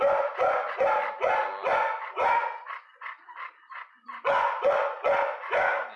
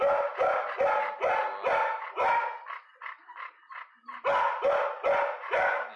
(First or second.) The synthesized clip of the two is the first